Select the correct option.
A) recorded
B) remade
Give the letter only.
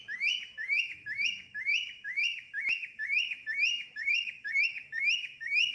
B